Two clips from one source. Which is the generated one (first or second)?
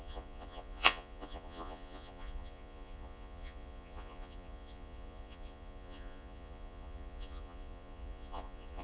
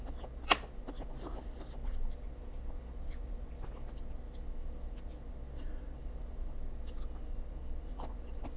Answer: first